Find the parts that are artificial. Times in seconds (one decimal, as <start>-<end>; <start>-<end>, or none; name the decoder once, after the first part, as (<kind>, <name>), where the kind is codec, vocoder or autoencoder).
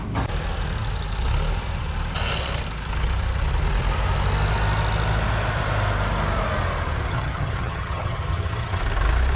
7.1-8.8 (vocoder, HiFi-GAN)